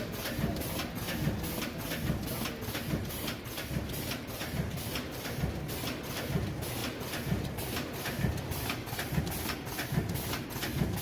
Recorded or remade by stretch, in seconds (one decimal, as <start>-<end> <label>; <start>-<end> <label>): 0.0-11.0 recorded

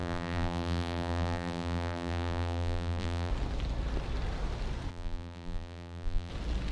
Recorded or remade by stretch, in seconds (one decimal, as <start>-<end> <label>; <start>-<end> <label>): 0.0-3.3 remade; 3.3-4.9 recorded; 4.9-6.3 remade; 6.3-6.7 recorded

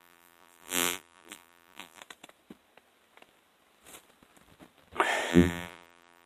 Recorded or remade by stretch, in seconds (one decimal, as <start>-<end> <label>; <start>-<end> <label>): 0.0-2.0 remade; 2.0-5.3 recorded; 5.3-6.3 remade